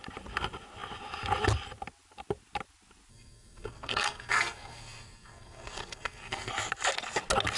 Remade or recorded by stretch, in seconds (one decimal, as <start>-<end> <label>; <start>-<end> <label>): 0.0-3.1 recorded; 3.1-6.5 remade; 6.5-7.6 recorded